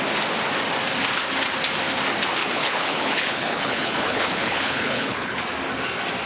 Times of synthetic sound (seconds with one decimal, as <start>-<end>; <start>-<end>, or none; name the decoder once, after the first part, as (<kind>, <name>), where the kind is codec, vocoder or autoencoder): 2.4-5.4 (codec, HILCodec)